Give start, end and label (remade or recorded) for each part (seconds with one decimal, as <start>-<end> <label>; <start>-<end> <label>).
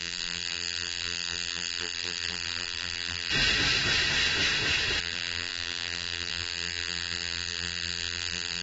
0.0-3.3 remade; 3.3-5.0 recorded; 5.0-8.6 remade